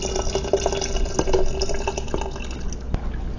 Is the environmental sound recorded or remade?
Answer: recorded